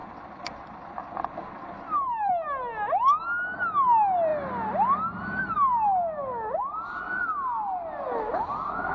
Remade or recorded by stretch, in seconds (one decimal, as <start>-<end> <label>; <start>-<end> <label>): 0.0-2.3 remade; 2.3-8.9 recorded